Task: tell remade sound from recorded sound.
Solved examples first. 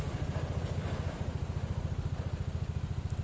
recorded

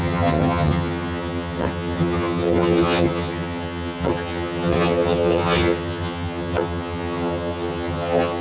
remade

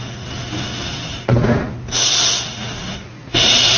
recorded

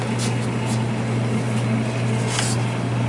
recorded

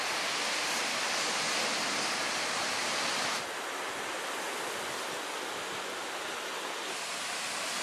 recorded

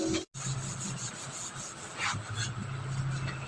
recorded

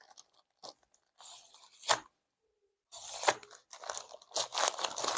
recorded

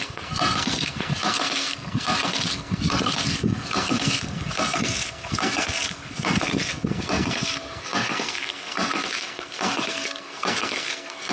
remade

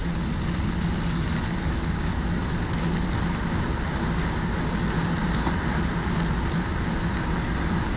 recorded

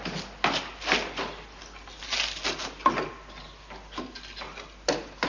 recorded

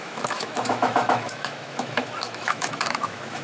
remade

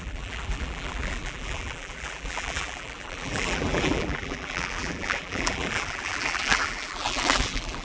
remade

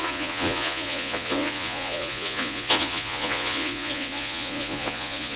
remade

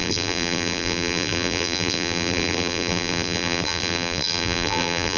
remade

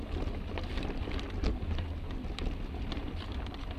recorded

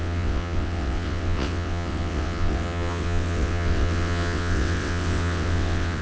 remade